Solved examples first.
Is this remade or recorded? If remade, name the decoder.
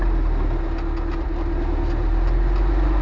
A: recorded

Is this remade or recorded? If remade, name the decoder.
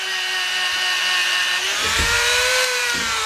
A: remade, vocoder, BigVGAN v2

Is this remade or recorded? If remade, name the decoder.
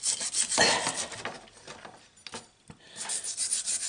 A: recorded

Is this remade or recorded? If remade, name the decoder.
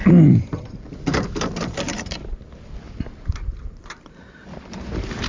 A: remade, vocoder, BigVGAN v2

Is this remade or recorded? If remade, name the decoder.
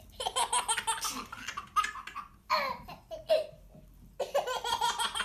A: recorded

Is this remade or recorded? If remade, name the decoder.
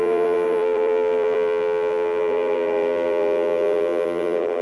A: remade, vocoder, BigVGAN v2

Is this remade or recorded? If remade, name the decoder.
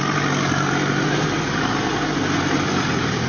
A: recorded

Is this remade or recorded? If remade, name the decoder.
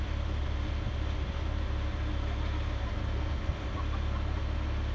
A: recorded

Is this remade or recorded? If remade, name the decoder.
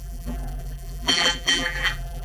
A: remade, vocoder, BigVGAN v2